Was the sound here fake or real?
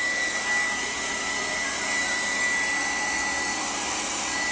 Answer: real